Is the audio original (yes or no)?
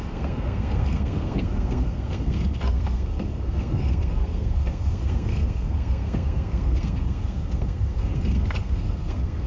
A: no